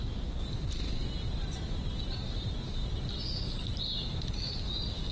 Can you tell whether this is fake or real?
real